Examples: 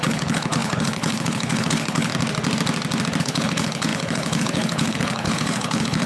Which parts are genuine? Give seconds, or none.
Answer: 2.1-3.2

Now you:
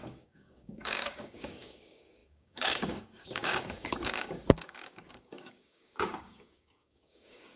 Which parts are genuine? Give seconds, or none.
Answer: none